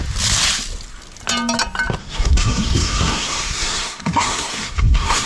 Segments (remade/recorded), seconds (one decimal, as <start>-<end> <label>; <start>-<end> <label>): 0.0-2.0 recorded; 2.0-5.3 remade